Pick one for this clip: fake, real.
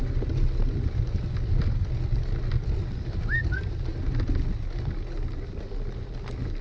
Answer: real